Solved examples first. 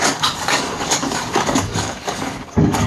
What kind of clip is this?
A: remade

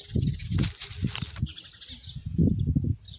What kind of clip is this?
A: recorded